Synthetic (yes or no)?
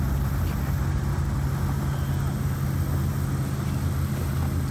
no